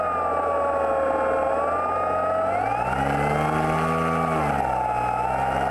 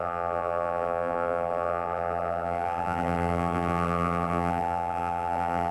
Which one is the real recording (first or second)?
first